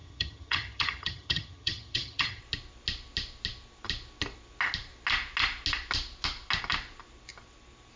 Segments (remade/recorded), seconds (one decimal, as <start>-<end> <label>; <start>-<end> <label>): 0.0-2.4 remade; 2.4-8.0 recorded